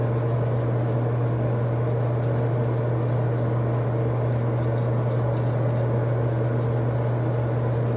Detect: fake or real real